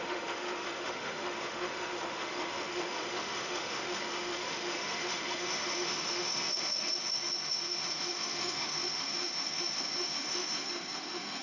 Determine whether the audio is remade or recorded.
remade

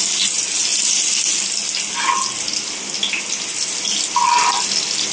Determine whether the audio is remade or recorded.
recorded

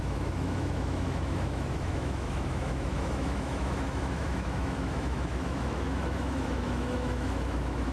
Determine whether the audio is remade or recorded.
remade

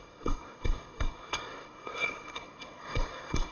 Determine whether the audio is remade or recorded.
remade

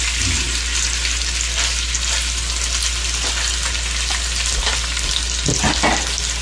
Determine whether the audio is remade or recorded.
recorded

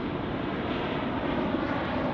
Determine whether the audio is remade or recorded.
recorded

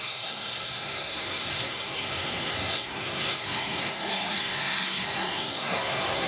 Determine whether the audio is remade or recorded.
remade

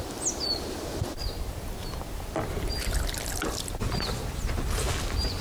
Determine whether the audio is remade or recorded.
recorded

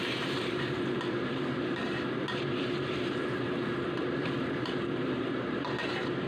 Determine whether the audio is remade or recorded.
remade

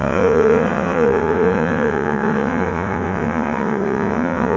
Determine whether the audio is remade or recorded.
remade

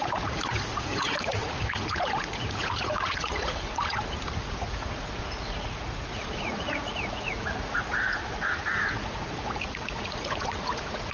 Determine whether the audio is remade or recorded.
remade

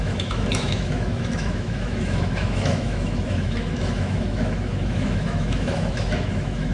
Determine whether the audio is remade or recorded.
remade